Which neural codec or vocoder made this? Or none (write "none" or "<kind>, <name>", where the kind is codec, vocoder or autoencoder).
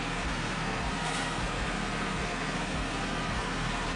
codec, SNAC